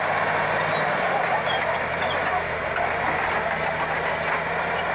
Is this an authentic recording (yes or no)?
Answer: yes